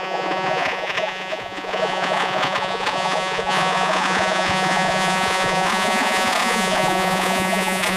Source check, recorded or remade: remade